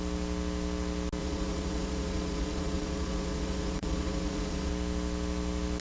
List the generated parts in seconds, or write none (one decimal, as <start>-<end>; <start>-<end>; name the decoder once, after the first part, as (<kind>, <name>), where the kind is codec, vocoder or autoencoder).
1.2-4.7 (vocoder, Vocos)